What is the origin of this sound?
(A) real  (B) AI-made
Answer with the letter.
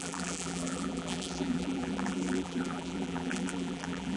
B